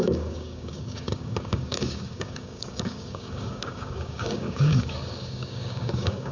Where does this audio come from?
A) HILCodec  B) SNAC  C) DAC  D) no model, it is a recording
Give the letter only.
C